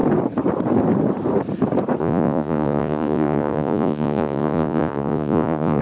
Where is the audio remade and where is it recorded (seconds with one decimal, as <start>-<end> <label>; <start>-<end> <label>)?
0.0-2.0 recorded; 2.0-5.8 remade

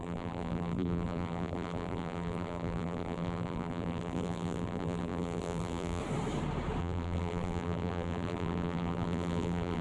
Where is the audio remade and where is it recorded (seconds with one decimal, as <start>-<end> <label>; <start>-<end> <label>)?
0.0-6.0 remade; 6.0-6.8 recorded; 6.8-9.8 remade